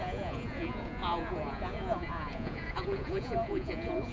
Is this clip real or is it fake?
fake